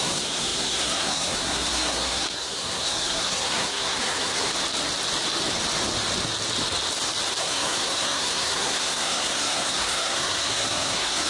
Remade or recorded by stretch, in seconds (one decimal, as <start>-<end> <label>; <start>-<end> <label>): 0.0-4.5 remade; 4.5-7.4 recorded; 7.4-11.3 remade